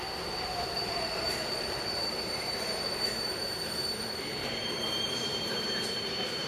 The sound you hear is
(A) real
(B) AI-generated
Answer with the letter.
B